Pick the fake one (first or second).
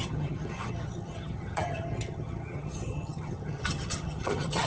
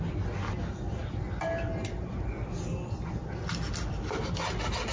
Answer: first